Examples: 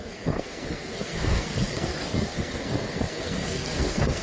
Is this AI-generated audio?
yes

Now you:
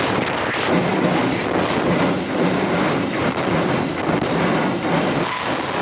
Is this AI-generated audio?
no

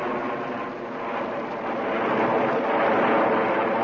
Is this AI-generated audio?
no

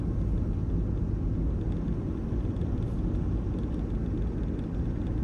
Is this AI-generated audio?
no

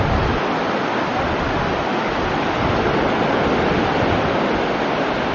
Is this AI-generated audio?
no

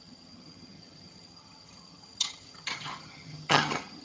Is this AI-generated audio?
yes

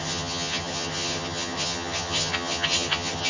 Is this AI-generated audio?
yes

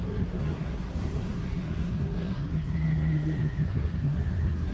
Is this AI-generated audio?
yes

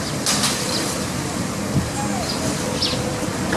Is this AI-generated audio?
no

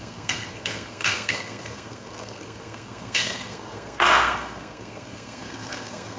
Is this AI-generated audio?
yes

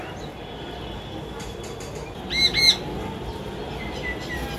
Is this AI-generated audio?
no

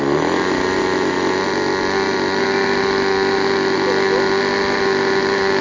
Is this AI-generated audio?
no